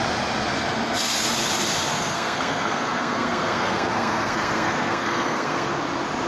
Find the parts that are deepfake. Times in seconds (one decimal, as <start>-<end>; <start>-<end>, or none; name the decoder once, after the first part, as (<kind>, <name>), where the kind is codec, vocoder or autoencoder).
1.9-5.7 (codec, SNAC)